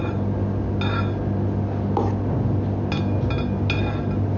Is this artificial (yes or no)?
no